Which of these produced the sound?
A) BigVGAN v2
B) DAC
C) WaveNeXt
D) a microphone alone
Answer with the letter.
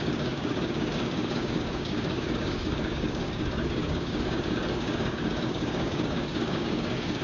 B